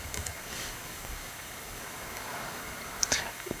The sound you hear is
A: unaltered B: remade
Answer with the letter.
B